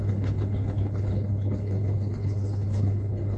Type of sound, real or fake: fake